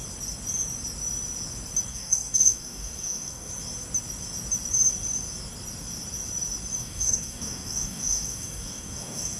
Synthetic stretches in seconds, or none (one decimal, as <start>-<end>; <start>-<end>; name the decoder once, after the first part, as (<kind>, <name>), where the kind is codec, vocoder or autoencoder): 1.9-3.5 (codec, DAC); 6.8-9.4